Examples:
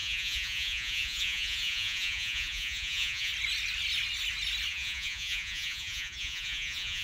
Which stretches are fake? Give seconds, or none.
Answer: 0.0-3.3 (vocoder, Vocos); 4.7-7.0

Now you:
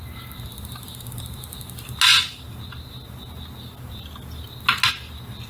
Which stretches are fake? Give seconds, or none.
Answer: none

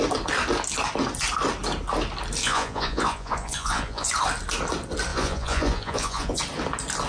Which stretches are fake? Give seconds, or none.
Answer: 2.4-4.1 (vocoder, Vocos); 5.1-6.4

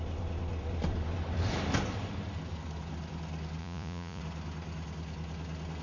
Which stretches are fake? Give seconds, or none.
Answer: 3.6-4.2 (vocoder, Vocos)